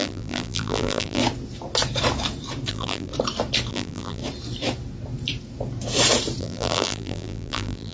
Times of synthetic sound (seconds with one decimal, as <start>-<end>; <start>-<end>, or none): 0.0-1.2; 2.7-3.1; 3.7-4.2; 6.4-7.9